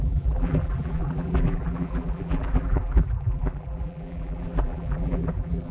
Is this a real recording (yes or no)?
no